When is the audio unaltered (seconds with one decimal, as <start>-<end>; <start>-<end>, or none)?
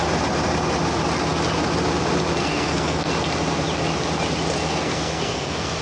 0.0-2.4; 3.1-4.7